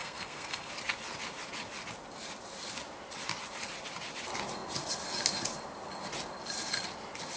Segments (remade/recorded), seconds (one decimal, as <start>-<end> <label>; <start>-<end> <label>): 0.0-0.7 remade; 0.7-7.4 recorded